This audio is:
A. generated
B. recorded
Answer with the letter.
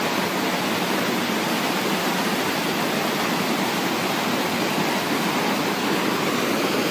B